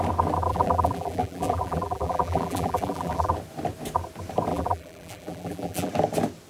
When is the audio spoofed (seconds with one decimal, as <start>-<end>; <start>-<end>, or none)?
0.5-3.3; 4.5-5.9